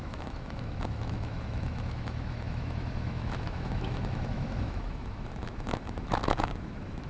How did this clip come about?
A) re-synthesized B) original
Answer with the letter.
A